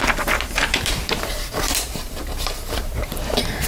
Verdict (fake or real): fake